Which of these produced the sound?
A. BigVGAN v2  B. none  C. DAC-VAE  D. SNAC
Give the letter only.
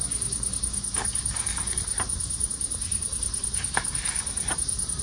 B